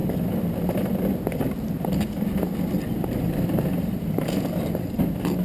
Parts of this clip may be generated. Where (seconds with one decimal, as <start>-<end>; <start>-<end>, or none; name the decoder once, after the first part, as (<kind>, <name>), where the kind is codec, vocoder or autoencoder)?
none